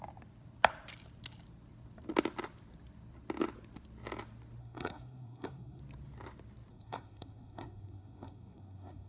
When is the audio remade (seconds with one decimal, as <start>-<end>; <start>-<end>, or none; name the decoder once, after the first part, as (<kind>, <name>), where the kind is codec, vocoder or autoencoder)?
4.6-5.8 (codec, SNAC); 6.7-9.1